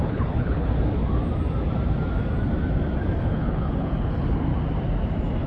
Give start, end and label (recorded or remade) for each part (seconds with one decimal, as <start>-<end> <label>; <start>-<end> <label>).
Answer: 0.0-0.7 remade; 0.7-3.2 recorded; 3.2-4.5 remade; 4.5-5.5 recorded